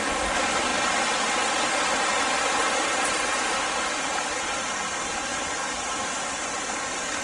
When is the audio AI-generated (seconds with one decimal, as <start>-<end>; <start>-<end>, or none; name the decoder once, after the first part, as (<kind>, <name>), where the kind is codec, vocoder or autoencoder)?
5.3-6.0 (vocoder, BigVGAN v2)